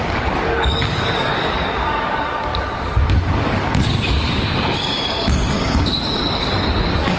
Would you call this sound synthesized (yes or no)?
yes